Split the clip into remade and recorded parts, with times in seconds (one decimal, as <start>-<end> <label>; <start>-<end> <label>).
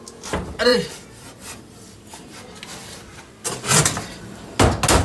0.0-0.7 recorded; 0.7-2.4 remade; 2.4-3.7 recorded; 3.7-4.6 remade; 4.6-5.0 recorded